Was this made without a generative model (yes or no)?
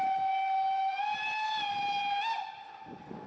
yes